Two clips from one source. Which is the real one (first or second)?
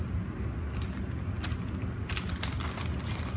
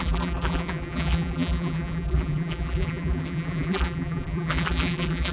first